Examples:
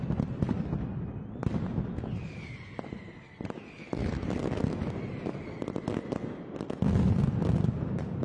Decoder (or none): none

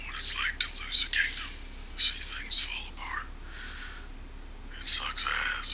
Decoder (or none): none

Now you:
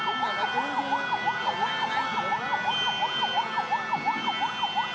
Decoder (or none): none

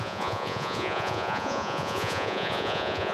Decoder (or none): vocoder, Vocos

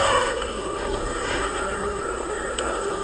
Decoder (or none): codec, SNAC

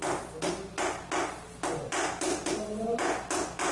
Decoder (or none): none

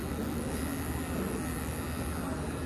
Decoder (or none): none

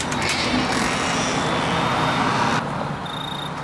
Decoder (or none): none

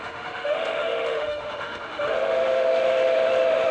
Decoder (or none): autoencoder, DAC-VAE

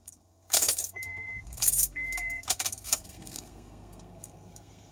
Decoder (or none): codec, SNAC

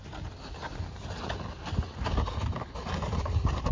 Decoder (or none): none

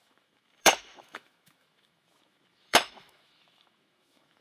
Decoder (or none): autoencoder, DAC-VAE